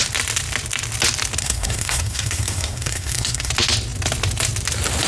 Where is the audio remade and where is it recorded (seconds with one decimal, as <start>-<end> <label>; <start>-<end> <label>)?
0.0-1.4 recorded; 1.4-3.5 remade; 3.5-5.1 recorded